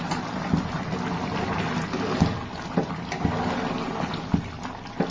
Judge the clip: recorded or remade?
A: recorded